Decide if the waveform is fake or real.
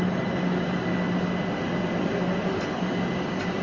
real